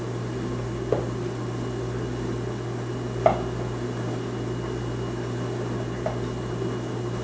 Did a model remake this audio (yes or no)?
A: no